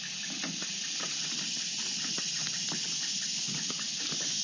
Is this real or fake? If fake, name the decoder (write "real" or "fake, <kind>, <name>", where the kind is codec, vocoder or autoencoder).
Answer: real